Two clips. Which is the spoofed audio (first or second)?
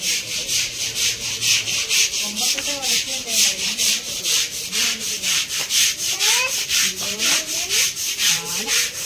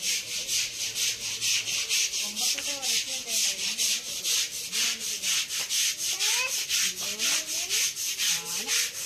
first